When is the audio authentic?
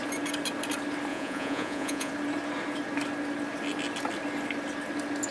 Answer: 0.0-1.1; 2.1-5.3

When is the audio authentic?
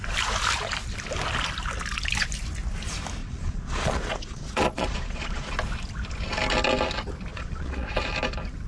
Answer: 0.0-3.2; 5.5-7.3; 8.0-8.7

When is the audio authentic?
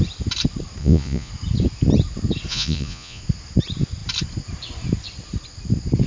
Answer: 0.0-0.8; 1.3-2.5; 3.2-6.1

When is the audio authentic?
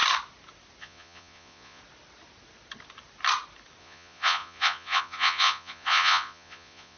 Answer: 0.0-0.8; 1.8-3.8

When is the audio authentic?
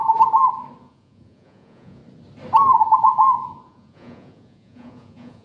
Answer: 0.0-0.8; 2.0-2.8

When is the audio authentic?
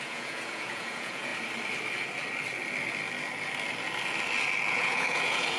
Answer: 1.3-4.7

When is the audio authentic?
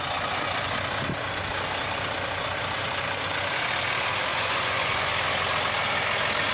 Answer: 0.0-4.3; 5.1-6.5